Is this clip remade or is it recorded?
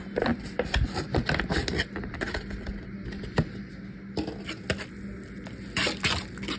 recorded